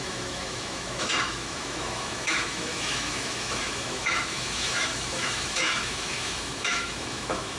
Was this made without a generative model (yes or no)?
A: no